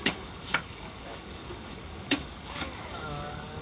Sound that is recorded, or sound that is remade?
remade